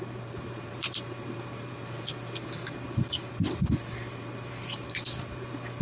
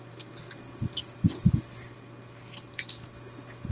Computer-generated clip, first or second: first